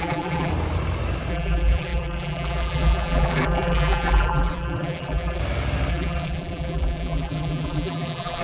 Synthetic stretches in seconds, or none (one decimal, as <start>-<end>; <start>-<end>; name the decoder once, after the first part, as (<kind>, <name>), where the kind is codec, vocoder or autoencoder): 0.0-0.5 (vocoder, BigVGAN v2); 1.3-5.4; 5.9-8.4